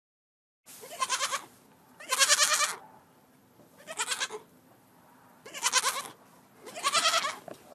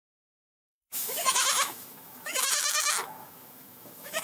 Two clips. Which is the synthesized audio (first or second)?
second